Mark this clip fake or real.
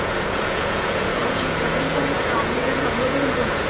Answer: fake